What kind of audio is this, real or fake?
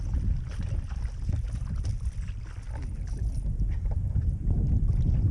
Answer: real